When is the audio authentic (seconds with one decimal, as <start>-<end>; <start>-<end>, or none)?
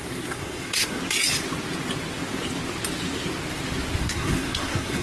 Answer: 1.0-4.0